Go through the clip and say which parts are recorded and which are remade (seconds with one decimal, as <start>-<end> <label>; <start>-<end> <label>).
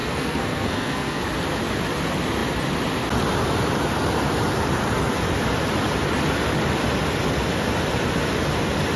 0.0-1.2 remade; 1.2-9.0 recorded